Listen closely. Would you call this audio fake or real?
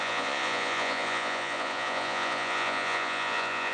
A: fake